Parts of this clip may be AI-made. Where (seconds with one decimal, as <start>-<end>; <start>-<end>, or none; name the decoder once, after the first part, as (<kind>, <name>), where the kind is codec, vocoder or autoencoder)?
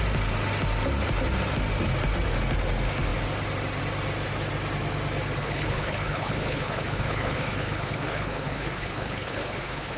5.4-10.0 (codec, HILCodec)